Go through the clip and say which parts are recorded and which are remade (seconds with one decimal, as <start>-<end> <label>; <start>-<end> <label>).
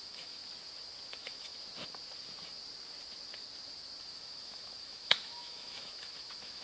0.0-0.4 remade; 0.4-1.1 recorded; 1.1-1.5 remade; 1.5-4.0 recorded; 4.0-6.6 remade